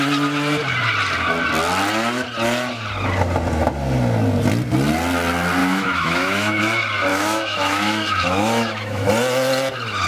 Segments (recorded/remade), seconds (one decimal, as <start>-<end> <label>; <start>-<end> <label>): 0.0-5.6 recorded; 5.6-6.6 remade; 6.6-7.1 recorded; 7.1-9.1 remade; 9.1-10.1 recorded